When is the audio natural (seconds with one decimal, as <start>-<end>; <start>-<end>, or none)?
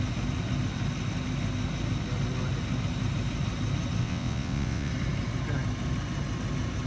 0.0-4.0; 4.9-6.9